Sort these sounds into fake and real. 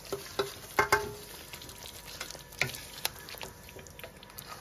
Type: real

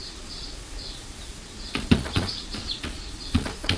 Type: fake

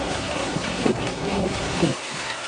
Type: fake